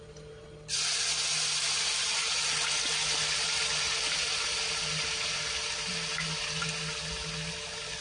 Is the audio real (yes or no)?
yes